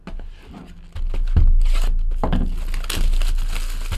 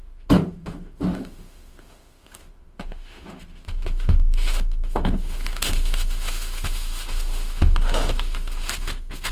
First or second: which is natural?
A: first